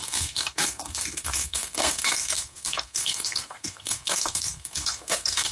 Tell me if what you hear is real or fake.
fake